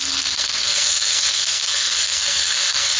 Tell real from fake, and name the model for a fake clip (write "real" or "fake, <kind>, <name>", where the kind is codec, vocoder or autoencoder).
fake, codec, SNAC